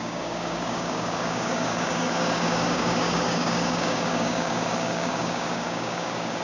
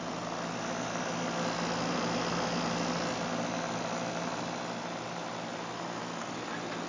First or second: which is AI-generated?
first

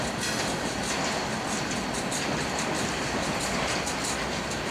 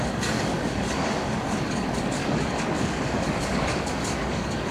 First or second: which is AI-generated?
second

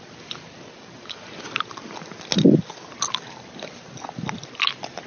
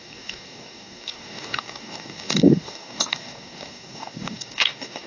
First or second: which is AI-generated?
second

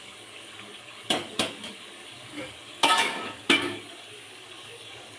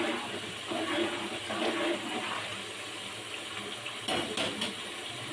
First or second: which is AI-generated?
first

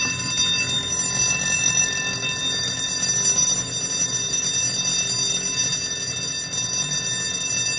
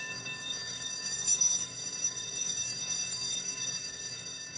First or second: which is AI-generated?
second